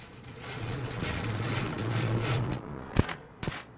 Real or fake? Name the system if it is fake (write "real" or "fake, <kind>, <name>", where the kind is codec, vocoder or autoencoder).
fake, vocoder, Vocos